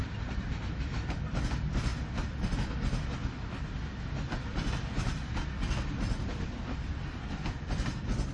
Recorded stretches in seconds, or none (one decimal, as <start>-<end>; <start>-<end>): 1.3-8.3